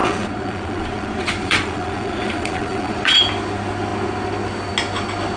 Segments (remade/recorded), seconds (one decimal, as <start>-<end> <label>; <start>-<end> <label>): 0.0-3.2 remade; 3.2-5.4 recorded